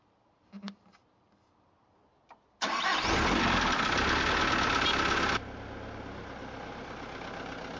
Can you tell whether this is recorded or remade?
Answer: recorded